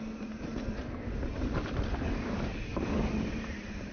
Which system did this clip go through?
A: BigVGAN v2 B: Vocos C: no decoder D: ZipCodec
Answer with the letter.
C